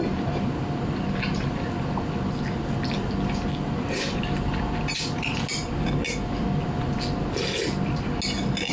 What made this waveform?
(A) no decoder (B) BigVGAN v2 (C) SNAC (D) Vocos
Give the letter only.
A